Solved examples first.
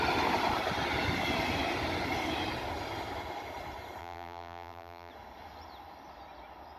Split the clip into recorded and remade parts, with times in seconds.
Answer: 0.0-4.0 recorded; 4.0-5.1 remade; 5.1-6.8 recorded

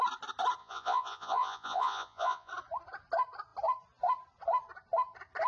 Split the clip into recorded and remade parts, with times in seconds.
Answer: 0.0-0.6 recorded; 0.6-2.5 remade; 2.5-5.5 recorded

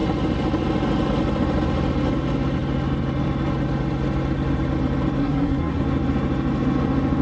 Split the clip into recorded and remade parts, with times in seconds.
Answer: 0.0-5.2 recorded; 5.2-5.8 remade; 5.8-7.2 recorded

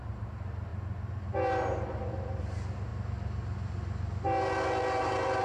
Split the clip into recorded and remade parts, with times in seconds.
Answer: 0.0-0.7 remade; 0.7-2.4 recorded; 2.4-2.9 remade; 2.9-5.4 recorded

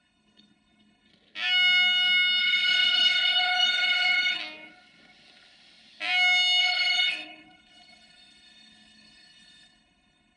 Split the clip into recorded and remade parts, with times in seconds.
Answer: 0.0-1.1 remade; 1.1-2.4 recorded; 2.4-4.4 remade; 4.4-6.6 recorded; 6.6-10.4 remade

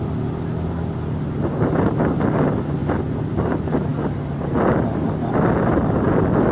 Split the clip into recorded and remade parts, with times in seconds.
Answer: 0.0-6.5 recorded

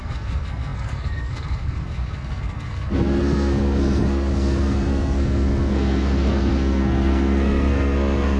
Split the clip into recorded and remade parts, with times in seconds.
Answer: 0.0-8.4 remade

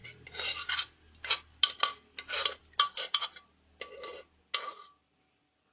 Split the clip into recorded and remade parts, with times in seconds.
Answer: 0.0-5.7 recorded